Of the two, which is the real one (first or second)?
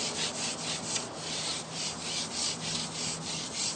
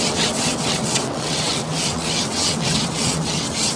first